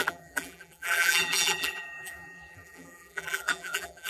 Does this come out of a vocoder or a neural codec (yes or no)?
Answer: yes